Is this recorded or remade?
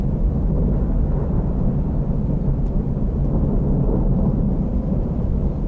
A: recorded